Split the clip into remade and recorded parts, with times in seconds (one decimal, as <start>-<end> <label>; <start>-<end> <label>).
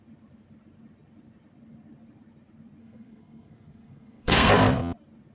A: 0.0-2.8 recorded; 2.8-4.5 remade; 4.5-5.3 recorded